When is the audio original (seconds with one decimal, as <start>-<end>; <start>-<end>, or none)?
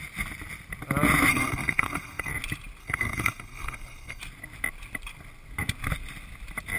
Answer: 0.0-1.3; 2.3-2.8; 4.2-6.8